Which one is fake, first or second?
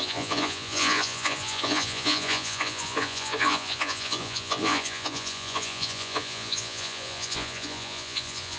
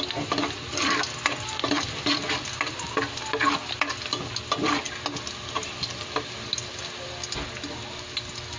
first